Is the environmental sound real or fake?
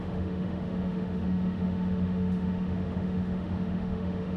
fake